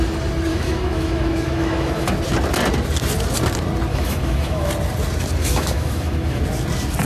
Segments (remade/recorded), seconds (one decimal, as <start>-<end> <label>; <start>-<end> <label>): 0.0-0.5 recorded; 0.5-2.1 remade; 2.1-3.9 recorded; 3.9-4.7 remade; 4.7-5.4 recorded; 5.4-6.4 remade; 6.4-7.1 recorded